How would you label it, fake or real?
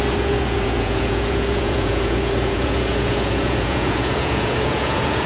fake